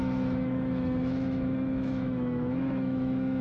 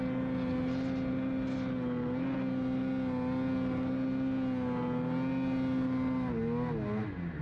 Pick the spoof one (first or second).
first